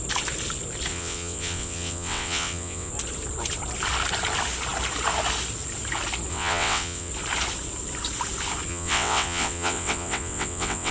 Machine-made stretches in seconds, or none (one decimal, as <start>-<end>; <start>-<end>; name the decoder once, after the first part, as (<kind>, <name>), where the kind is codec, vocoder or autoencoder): 0.9-2.9 (vocoder, WaveNeXt); 6.3-7.1; 8.7-10.9